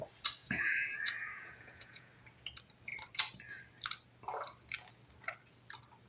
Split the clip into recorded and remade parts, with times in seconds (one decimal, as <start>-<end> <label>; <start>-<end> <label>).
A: 0.0-0.4 recorded; 0.4-2.1 remade; 2.1-6.1 recorded